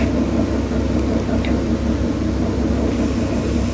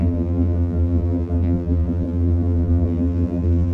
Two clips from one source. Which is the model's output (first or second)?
second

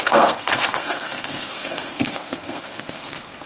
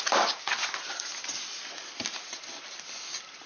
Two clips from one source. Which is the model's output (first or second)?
first